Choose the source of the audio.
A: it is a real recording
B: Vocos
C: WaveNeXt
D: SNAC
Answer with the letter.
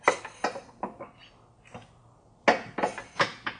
A